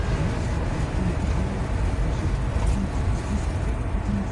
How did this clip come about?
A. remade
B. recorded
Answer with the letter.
B